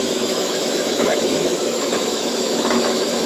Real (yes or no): no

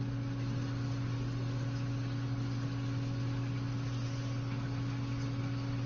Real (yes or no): yes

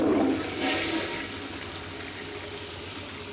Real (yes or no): yes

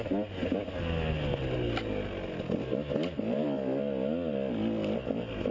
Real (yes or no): yes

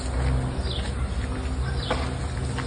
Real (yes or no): yes